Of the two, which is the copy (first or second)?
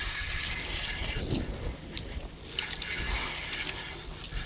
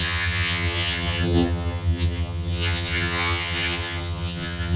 second